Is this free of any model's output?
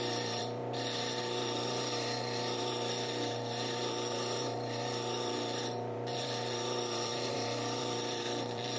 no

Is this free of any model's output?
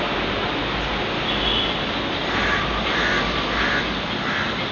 yes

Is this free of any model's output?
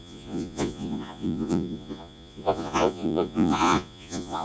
no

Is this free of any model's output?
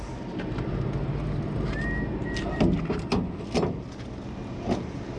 yes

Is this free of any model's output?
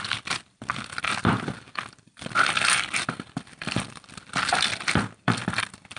no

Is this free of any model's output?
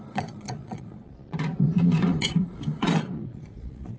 no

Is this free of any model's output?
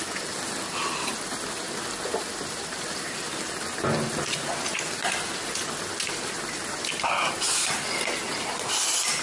yes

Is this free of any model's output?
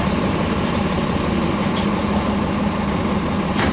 yes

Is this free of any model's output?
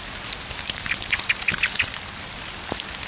yes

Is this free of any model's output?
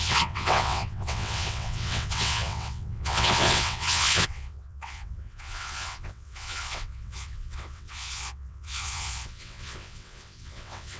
no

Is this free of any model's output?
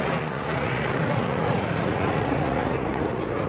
no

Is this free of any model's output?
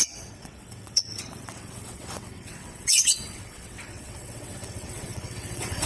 no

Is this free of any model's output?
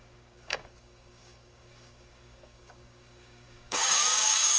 no